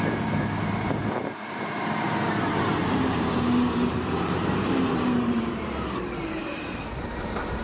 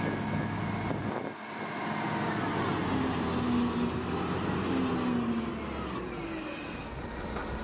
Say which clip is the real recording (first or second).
second